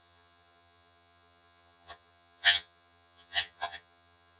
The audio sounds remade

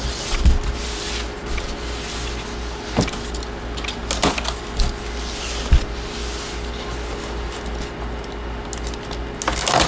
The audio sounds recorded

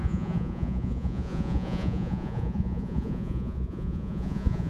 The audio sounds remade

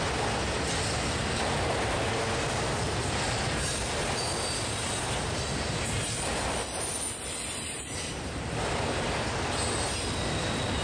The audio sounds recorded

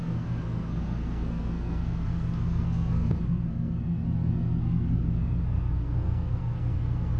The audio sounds remade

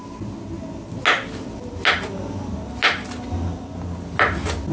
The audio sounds recorded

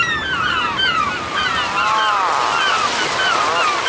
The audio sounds recorded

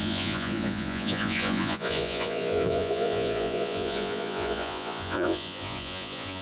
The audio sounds remade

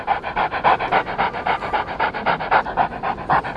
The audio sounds recorded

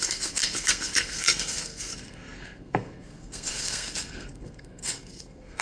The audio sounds remade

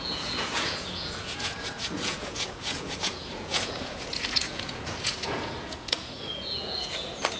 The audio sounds remade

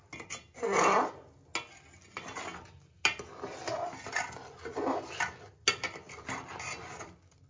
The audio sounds recorded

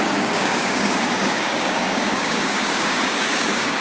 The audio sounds remade